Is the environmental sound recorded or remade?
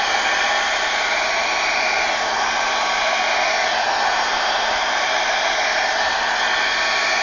recorded